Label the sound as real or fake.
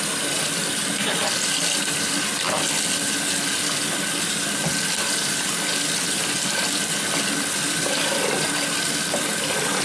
real